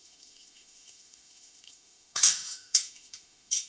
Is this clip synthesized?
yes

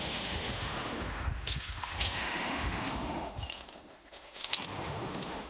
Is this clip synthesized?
yes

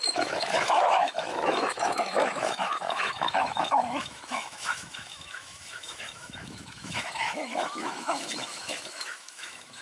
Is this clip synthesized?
yes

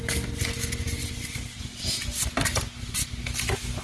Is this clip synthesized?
no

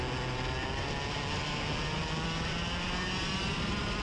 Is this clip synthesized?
no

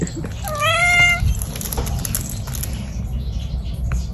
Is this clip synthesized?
no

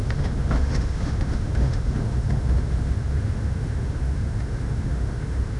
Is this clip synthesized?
yes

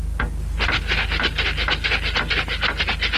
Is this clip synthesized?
no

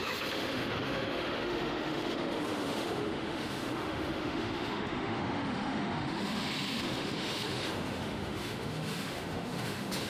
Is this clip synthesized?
yes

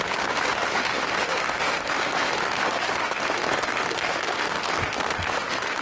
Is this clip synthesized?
yes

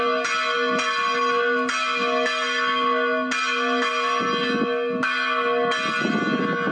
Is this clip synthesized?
no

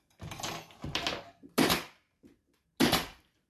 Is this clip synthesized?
no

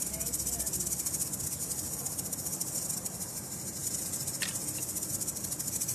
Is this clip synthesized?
no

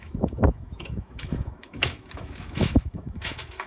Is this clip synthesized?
yes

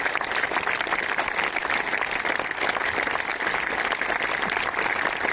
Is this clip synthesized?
no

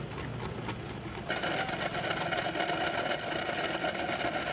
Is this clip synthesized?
no